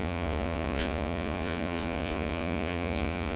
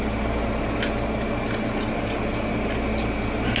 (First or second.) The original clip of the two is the second